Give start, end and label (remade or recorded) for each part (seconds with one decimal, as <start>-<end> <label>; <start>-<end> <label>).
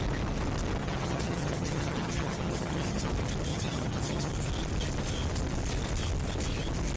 0.0-0.8 recorded; 0.8-3.1 remade; 3.1-3.5 recorded; 3.5-4.3 remade; 4.3-7.0 recorded